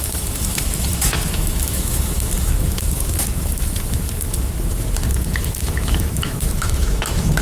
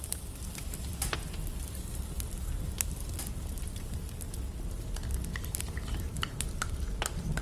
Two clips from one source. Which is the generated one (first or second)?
first